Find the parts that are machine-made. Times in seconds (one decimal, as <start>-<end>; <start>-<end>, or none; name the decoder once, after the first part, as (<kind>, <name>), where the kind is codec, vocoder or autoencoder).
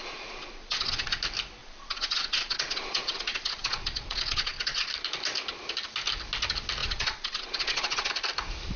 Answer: 0.0-1.2 (vocoder, Vocos); 1.6-4.9; 6.8-8.1